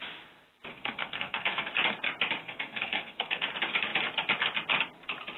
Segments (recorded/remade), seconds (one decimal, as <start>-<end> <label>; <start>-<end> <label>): 0.0-0.7 recorded; 0.7-1.7 remade; 1.7-2.4 recorded; 2.4-3.5 remade; 3.5-5.4 recorded